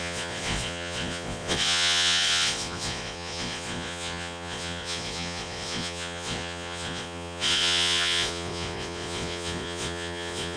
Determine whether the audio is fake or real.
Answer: fake